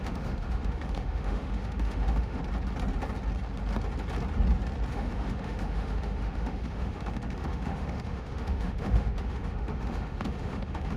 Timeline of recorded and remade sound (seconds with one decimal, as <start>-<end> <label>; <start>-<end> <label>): 0.0-2.4 remade; 2.4-4.9 recorded; 4.9-11.0 remade